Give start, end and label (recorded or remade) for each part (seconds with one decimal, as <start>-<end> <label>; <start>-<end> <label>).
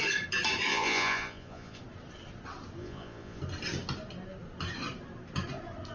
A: 0.0-0.7 recorded; 0.7-1.8 remade; 1.8-2.8 recorded; 2.8-3.4 remade; 3.4-5.9 recorded